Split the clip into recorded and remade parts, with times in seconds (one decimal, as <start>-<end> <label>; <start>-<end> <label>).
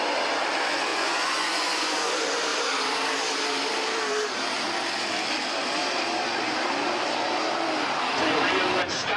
0.0-0.9 recorded; 0.9-2.1 remade; 2.1-9.2 recorded